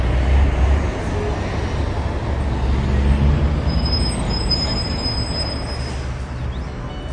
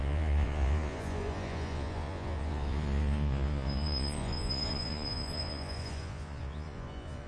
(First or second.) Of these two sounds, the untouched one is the first